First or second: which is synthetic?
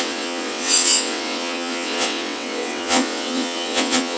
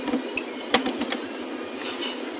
first